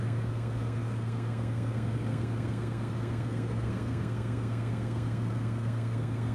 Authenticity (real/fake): fake